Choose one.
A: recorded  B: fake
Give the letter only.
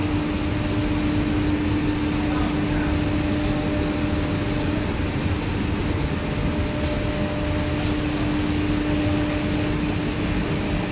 A